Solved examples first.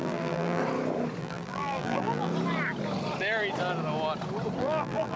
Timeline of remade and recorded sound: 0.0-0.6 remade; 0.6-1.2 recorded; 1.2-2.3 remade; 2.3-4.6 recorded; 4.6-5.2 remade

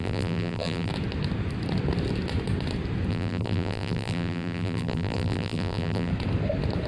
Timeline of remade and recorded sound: 0.0-0.9 remade; 0.9-3.1 recorded; 3.1-6.1 remade; 6.1-6.9 recorded

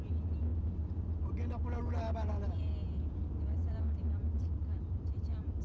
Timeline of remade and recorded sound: 0.0-4.2 recorded; 4.2-5.6 remade

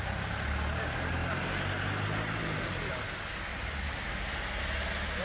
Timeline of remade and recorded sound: 0.0-3.5 recorded; 3.5-4.6 remade; 4.6-5.2 recorded

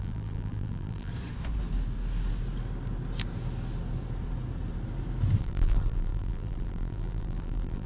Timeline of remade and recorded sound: 0.0-1.1 remade; 1.1-5.4 recorded; 5.4-7.9 remade

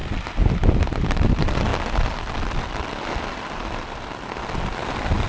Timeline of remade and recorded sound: 0.0-5.3 recorded

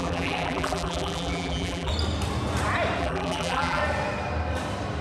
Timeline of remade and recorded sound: 0.0-1.9 remade; 1.9-3.0 recorded; 3.0-3.8 remade; 3.8-5.0 recorded